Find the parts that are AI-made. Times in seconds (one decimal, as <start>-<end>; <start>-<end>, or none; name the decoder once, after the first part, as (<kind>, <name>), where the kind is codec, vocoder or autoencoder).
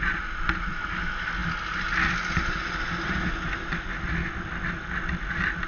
none